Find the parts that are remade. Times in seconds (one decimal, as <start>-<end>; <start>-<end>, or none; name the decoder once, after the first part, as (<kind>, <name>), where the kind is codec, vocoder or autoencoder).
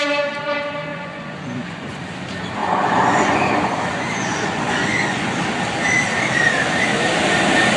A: 0.9-2.0 (vocoder, Vocos); 2.6-5.3